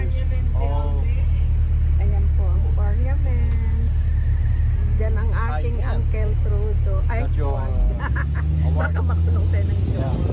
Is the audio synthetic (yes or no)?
no